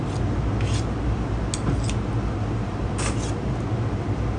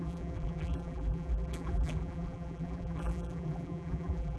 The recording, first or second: first